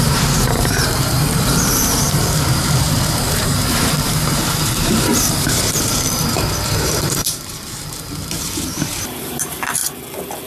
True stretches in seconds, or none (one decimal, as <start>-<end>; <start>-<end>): 9.8-10.5